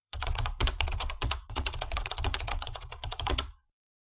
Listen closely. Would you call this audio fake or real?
fake